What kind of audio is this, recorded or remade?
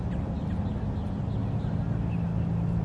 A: recorded